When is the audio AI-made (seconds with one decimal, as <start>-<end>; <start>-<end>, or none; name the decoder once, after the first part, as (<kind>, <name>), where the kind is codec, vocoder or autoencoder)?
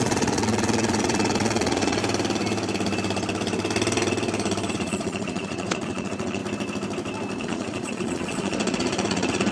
0.0-2.0 (vocoder, Vocos); 4.7-6.4; 7.4-9.5